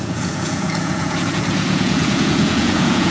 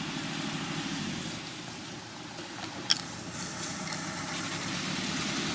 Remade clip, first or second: first